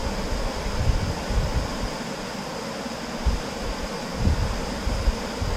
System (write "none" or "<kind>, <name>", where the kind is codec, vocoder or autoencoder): none